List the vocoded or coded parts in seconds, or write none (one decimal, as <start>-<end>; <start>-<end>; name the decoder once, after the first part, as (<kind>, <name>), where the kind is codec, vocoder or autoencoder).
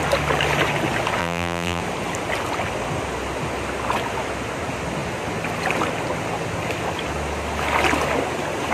1.2-1.8 (vocoder, BigVGAN v2)